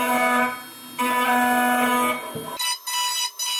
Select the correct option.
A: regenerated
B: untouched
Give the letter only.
B